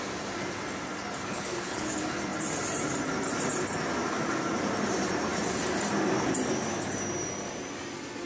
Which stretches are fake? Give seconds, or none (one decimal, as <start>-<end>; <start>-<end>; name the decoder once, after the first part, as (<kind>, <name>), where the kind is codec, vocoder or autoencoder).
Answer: 1.3-1.9 (codec, HILCodec)